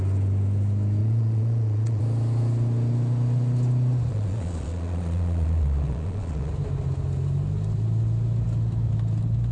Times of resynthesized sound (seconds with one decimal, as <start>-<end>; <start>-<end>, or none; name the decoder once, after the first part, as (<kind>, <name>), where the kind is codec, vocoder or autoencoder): 1.0-2.0 (vocoder, Vocos); 4.1-6.5